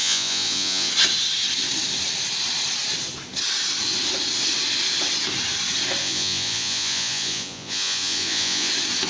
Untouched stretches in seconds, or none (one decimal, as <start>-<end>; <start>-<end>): 0.9-6.0; 8.7-9.1